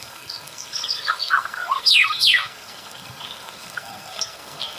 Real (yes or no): no